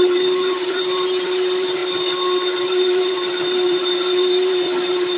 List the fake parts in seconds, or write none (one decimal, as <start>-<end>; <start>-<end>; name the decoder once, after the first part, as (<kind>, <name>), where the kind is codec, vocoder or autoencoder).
0.0-1.8 (vocoder, BigVGAN v2); 2.6-5.2